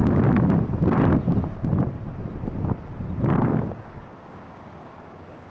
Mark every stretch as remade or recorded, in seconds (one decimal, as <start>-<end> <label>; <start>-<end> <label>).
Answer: 0.0-3.3 recorded; 3.3-5.5 remade